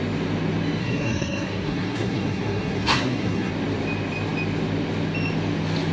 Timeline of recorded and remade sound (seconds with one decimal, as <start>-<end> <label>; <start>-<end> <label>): 0.0-0.8 recorded; 0.8-3.5 remade; 3.5-5.9 recorded